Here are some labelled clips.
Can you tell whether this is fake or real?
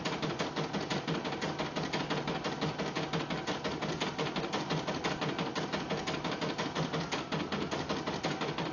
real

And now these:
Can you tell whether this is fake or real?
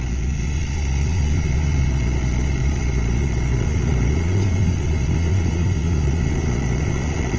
fake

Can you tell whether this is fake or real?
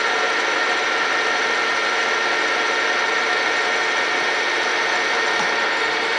real